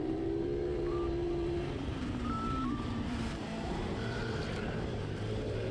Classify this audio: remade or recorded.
remade